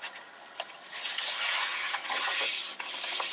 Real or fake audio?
fake